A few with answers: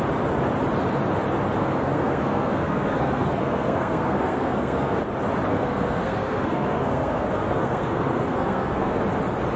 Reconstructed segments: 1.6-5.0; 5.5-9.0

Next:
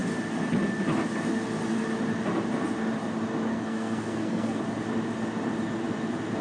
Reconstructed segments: 3.5-4.6

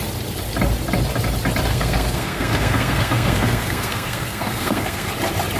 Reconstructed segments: 1.7-5.1

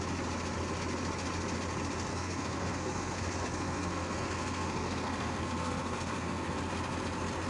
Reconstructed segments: 2.1-6.6